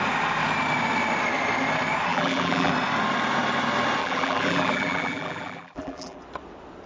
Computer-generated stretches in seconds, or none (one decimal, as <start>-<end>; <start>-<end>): 2.1-2.7; 4.0-6.2